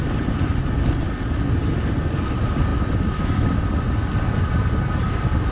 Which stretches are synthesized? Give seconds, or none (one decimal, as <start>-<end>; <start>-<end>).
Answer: 0.0-0.7